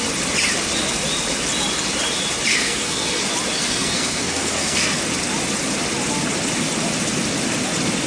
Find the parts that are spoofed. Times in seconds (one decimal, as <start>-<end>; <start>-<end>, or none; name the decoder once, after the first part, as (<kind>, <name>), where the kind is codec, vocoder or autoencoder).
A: 2.5-3.2 (codec, SNAC); 3.6-5.0